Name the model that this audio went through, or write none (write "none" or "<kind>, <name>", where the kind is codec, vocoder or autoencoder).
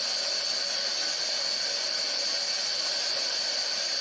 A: none